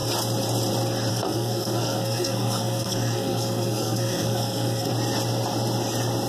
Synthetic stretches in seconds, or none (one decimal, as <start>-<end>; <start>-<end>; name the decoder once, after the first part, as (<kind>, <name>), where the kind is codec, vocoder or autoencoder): 1.1-4.9 (codec, SNAC)